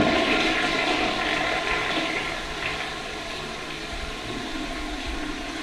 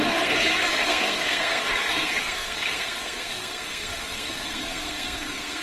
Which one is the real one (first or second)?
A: first